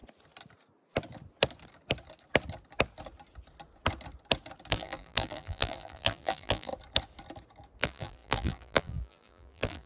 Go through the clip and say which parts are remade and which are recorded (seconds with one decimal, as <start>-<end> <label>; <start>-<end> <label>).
0.0-4.7 recorded; 4.7-6.7 remade; 6.7-7.8 recorded; 7.8-9.9 remade